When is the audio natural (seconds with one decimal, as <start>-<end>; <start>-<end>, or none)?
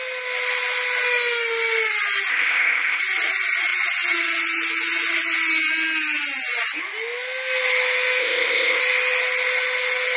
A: 0.0-2.3; 3.0-8.2; 8.8-10.2